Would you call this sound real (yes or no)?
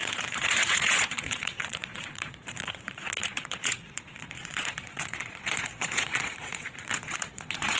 no